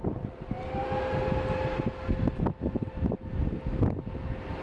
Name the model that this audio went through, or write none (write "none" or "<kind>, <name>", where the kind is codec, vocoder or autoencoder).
none